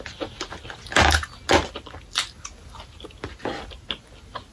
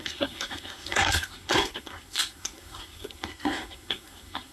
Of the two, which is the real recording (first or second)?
first